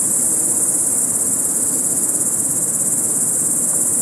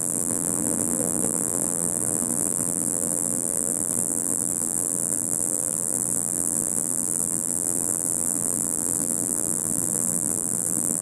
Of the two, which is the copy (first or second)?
second